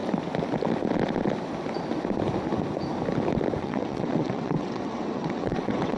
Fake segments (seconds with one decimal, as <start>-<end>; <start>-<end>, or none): 3.6-6.0